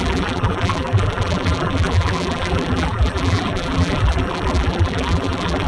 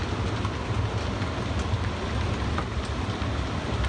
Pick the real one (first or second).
second